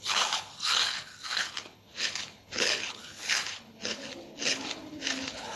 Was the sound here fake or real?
fake